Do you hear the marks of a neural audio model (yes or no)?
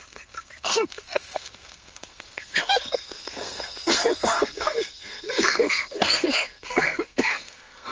yes